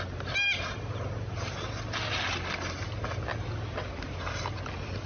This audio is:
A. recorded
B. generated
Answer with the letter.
A